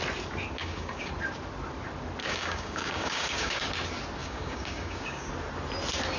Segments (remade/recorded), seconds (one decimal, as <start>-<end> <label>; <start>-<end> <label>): 0.0-0.6 recorded; 0.6-1.1 remade; 1.1-2.2 recorded; 2.2-3.6 remade; 3.6-4.2 recorded; 4.2-5.3 remade; 5.3-6.2 recorded